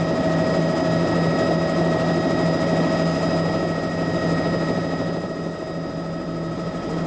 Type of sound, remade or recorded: recorded